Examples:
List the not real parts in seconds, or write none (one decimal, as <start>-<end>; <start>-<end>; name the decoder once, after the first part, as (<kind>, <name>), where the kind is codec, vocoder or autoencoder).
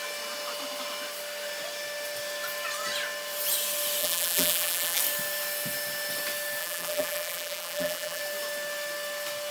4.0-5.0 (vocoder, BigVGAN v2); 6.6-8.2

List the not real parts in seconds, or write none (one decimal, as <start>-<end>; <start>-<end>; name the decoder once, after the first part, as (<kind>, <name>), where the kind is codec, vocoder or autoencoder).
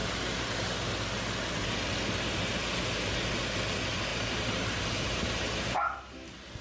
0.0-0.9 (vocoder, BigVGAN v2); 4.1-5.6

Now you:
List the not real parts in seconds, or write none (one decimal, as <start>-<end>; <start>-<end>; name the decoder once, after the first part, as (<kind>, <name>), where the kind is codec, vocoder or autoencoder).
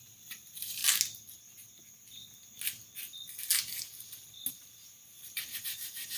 0.0-0.8 (vocoder, BigVGAN v2); 4.5-6.2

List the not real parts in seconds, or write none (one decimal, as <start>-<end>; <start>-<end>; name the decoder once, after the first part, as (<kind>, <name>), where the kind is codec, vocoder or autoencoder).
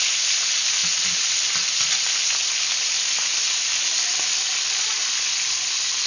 none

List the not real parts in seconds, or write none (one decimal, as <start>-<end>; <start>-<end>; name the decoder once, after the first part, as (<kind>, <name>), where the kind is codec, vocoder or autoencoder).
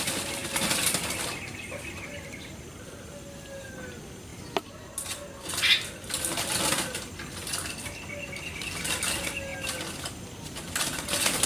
0.0-4.3 (vocoder, BigVGAN v2); 8.6-9.5; 10.1-11.5